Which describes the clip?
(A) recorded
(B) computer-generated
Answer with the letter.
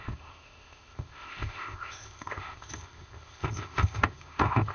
B